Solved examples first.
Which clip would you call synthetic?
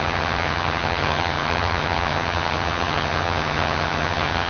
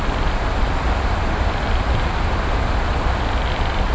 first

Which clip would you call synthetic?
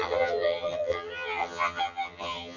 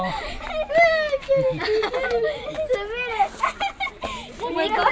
first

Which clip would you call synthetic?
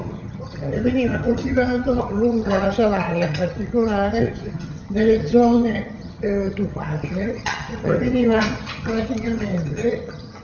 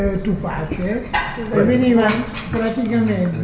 first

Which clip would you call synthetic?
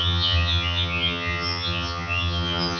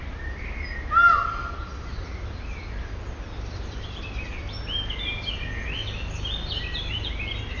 first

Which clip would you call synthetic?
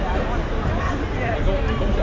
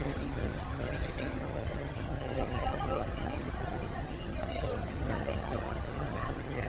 second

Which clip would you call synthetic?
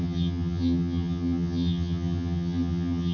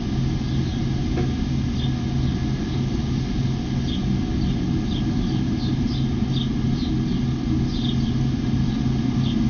first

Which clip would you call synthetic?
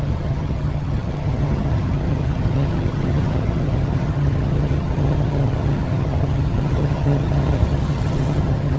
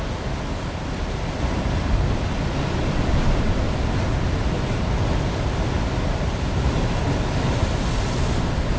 first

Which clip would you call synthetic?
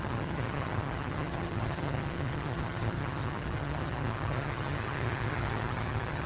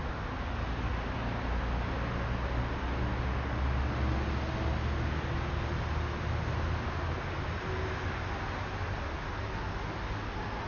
first